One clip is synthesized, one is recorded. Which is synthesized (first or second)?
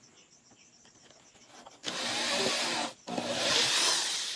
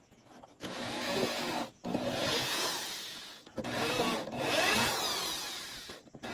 second